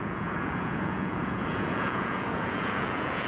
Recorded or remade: remade